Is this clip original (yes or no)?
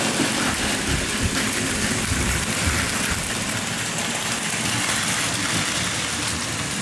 yes